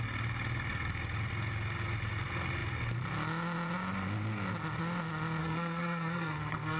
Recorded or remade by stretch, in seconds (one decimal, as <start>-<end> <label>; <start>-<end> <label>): 0.0-5.4 recorded; 5.4-6.8 remade